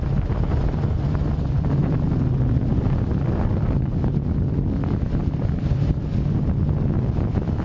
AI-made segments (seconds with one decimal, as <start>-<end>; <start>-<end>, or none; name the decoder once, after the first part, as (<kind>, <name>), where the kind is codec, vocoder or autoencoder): none